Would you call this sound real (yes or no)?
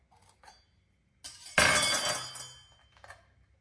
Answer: yes